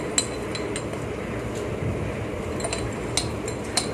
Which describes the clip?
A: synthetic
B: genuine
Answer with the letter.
B